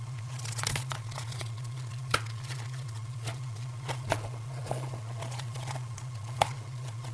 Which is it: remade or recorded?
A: remade